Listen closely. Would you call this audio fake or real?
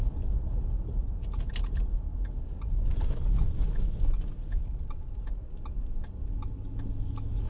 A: real